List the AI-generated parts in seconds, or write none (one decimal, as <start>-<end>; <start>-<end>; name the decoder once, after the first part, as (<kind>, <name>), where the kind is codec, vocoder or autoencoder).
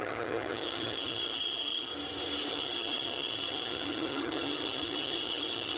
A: 0.0-1.9 (vocoder, HiFi-GAN); 2.5-5.8